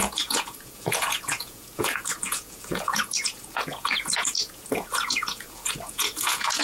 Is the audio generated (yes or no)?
yes